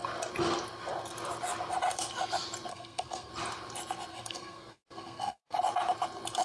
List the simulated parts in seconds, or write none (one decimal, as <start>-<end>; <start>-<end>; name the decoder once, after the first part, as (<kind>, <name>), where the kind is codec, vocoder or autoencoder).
2.7-3.3 (codec, SNAC); 4.1-5.6